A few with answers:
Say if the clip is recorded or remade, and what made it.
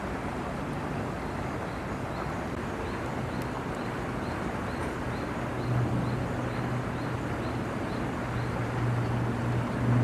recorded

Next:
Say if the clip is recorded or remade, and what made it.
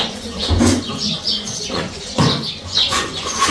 remade, vocoder, Vocos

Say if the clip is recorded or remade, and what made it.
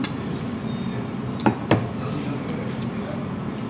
remade, vocoder, BigVGAN v2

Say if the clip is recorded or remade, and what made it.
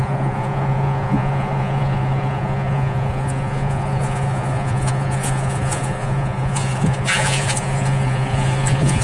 remade, vocoder, Vocos